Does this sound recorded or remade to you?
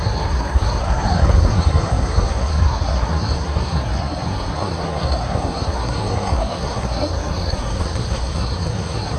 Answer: remade